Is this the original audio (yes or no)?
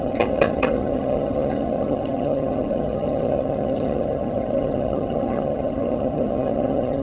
no